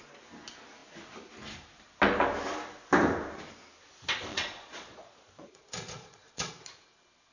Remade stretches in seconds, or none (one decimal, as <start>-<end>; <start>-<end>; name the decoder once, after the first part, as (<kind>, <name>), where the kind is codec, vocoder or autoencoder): 4.3-6.5 (vocoder, Vocos)